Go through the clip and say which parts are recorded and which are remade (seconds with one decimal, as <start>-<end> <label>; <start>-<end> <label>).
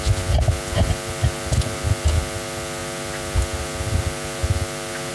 0.0-5.1 recorded